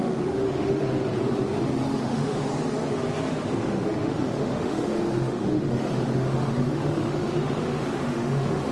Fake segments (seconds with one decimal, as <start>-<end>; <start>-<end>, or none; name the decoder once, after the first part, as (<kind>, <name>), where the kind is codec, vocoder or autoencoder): 0.0-0.9 (autoencoder, DAC-VAE); 2.0-2.5; 3.3-8.7